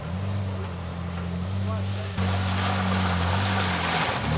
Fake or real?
real